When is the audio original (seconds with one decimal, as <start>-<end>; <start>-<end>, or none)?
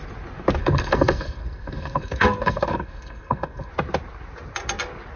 0.0-0.6; 3.7-5.2